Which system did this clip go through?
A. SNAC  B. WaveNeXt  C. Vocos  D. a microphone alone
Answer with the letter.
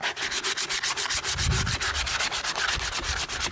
D